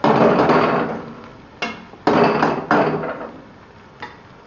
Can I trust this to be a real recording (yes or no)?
yes